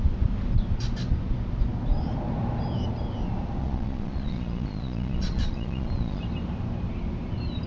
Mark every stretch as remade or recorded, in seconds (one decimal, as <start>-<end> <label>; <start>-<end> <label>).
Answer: 0.0-3.6 recorded; 3.6-6.2 remade; 6.2-7.7 recorded